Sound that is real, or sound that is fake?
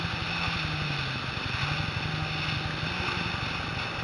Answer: real